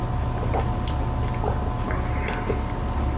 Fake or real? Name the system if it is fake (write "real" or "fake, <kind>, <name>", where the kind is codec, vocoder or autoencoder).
real